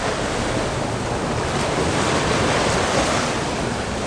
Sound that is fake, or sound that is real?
real